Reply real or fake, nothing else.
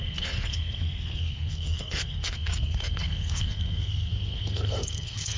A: fake